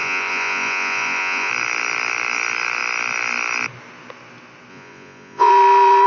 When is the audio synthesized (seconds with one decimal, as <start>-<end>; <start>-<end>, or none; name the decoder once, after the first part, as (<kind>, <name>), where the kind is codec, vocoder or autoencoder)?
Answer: 0.0-1.5 (vocoder, Vocos); 4.7-5.5